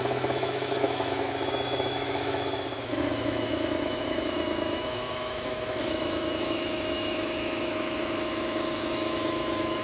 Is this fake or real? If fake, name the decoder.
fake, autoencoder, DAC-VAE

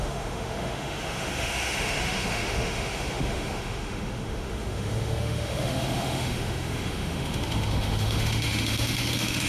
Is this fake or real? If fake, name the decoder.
fake, autoencoder, DAC-VAE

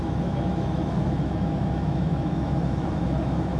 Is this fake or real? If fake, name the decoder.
fake, autoencoder, DAC-VAE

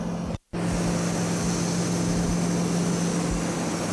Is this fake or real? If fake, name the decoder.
real